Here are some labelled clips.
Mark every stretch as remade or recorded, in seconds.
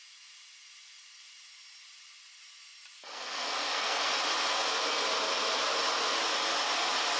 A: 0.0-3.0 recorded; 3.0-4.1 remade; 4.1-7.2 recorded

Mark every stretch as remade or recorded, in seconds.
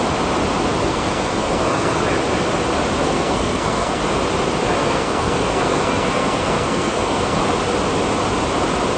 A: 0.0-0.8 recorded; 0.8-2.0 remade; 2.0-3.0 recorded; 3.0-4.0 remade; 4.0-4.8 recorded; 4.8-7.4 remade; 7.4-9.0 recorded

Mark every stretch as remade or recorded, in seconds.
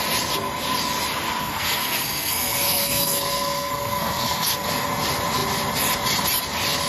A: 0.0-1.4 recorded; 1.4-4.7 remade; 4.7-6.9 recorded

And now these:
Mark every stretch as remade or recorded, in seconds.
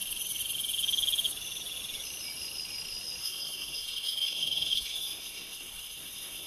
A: 0.0-3.2 recorded; 3.2-6.5 remade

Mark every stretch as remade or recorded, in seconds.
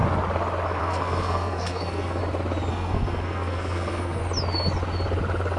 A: 0.0-0.8 recorded; 0.8-2.2 remade; 2.2-2.7 recorded; 2.7-4.2 remade; 4.2-5.6 recorded